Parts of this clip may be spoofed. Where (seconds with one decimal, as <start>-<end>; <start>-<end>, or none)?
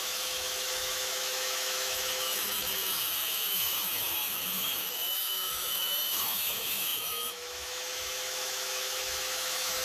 0.0-9.8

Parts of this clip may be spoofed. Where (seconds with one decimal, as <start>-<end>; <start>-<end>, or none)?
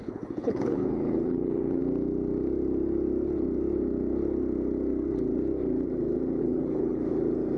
0.0-1.8; 6.4-7.0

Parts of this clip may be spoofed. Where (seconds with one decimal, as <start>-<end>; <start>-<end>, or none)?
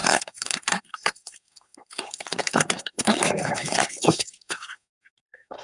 0.0-5.6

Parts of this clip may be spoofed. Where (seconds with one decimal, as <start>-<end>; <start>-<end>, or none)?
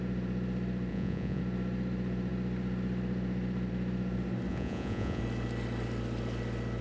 0.9-1.4; 4.5-5.2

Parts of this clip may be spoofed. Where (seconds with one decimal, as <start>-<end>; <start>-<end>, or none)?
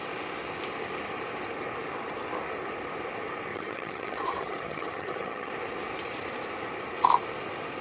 3.5-5.5